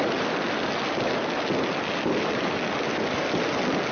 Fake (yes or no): no